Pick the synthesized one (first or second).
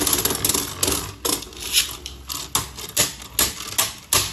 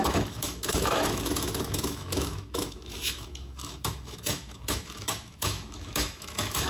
second